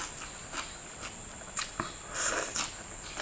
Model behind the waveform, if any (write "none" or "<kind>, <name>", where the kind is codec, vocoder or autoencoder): none